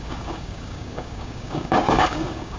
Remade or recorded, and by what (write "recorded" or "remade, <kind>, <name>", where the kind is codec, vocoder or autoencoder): remade, codec, DAC